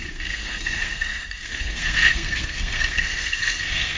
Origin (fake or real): fake